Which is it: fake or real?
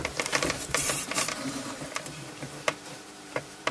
fake